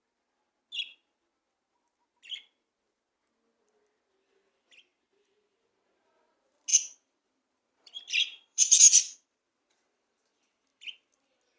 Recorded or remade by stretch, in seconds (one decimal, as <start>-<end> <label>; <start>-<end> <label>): 0.0-6.7 recorded; 6.7-10.6 remade; 10.6-11.6 recorded